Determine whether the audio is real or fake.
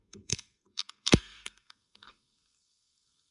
fake